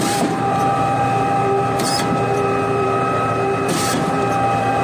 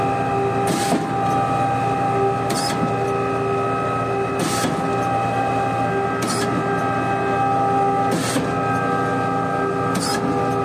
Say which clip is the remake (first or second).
first